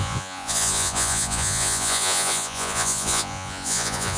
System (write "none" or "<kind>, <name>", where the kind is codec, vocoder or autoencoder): vocoder, Vocos